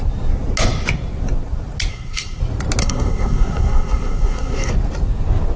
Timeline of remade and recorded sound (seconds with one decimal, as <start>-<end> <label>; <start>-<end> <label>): 0.0-1.9 recorded; 1.9-2.4 remade; 2.4-2.8 recorded; 2.8-4.7 remade; 4.7-5.6 recorded